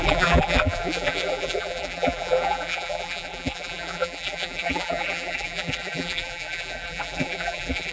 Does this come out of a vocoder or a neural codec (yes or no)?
yes